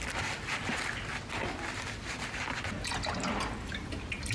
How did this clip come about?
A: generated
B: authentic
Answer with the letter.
B